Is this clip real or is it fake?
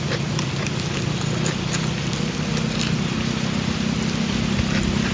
real